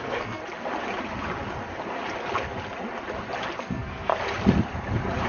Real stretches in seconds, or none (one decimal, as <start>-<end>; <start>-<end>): 0.4-3.6; 4.1-5.3